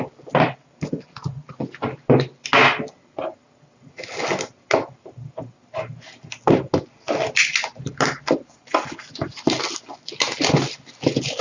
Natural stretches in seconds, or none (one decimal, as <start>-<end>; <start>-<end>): 0.0-11.4